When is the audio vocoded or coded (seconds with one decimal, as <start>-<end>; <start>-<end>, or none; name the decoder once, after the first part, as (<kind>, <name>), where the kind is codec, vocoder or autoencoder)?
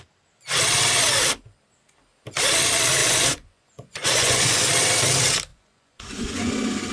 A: 3.0-4.7 (vocoder, Vocos); 5.5-6.5